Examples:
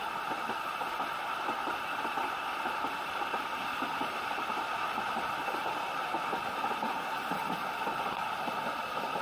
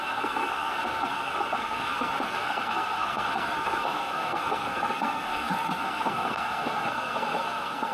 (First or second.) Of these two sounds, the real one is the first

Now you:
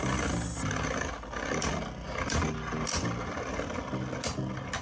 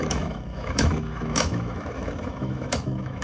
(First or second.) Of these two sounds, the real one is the first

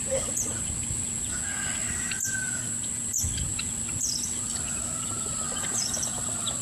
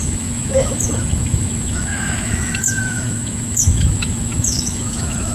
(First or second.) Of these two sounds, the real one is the first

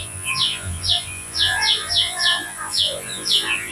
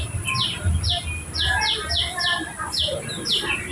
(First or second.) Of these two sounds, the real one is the second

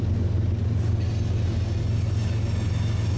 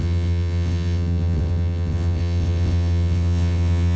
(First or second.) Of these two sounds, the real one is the first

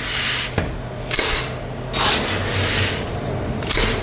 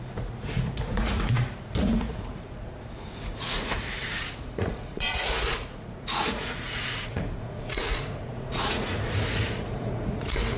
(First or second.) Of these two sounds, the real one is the first